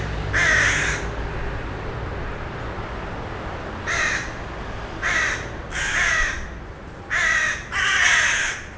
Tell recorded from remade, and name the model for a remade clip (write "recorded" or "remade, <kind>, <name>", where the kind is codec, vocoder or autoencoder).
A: recorded